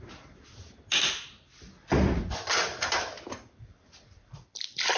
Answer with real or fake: real